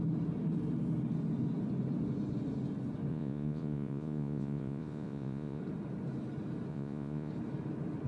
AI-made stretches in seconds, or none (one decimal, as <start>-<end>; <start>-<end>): 3.1-5.6; 6.7-7.3

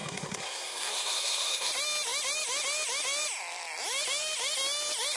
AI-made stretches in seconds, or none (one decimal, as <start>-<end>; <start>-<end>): 0.0-1.7

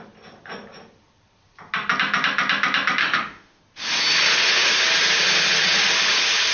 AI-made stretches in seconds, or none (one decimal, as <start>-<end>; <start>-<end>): 3.0-3.6

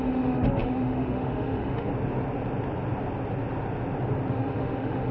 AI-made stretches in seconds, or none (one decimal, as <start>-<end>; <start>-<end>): 0.0-1.9; 4.3-5.1

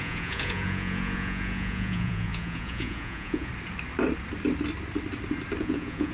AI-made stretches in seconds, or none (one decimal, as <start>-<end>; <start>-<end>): 0.0-3.5; 5.6-6.1

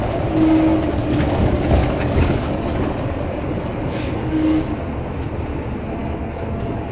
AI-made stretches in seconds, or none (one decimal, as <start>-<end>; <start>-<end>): 0.7-4.7; 6.0-6.9

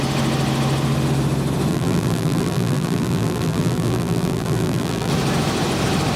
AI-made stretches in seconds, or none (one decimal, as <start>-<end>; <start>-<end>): 1.7-5.1